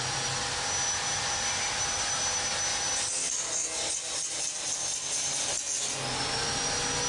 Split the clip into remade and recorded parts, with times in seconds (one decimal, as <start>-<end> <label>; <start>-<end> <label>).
0.0-7.1 recorded